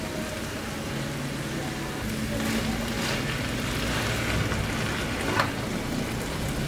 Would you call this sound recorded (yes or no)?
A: yes